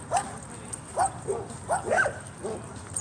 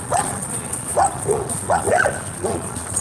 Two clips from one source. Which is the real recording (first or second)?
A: first